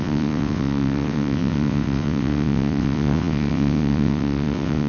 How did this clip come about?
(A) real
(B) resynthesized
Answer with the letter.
B